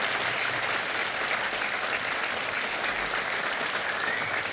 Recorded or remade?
recorded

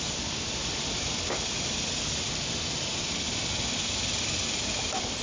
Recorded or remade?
remade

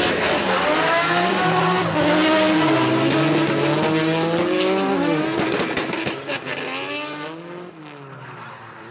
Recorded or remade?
recorded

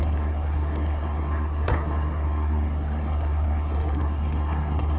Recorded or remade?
remade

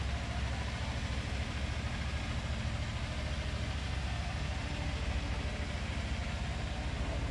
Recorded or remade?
recorded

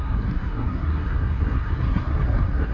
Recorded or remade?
remade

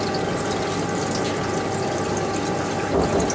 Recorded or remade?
recorded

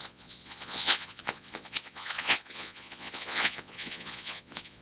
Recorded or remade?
remade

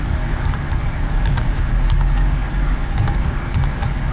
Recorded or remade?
remade